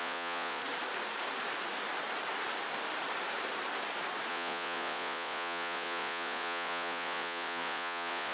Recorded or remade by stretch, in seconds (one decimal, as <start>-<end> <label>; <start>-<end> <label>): 0.0-0.6 remade; 0.6-4.3 recorded; 4.3-8.3 remade